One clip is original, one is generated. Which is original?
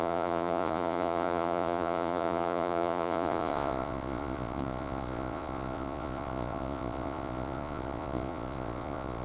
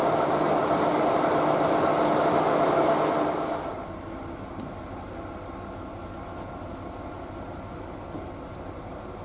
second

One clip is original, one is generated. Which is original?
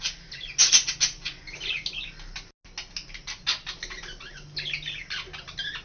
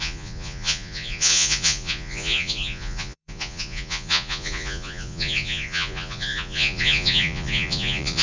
first